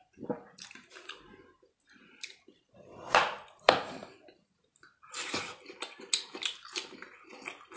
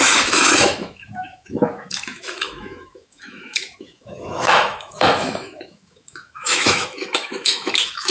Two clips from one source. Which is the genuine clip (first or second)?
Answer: first